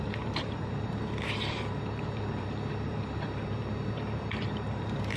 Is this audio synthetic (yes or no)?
yes